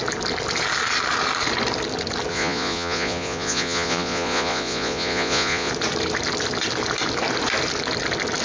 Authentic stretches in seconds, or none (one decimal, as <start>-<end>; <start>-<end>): 0.0-2.3; 5.7-8.4